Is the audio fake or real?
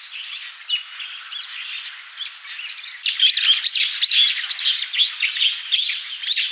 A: real